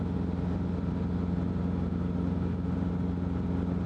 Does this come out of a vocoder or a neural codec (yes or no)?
no